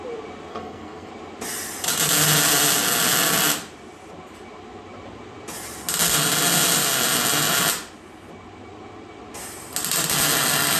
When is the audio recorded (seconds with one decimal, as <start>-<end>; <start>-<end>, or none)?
0.0-0.5; 1.1-10.8